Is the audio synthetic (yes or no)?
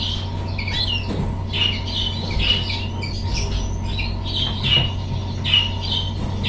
no